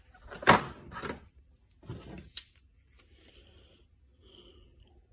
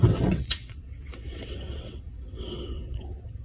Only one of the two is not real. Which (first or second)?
second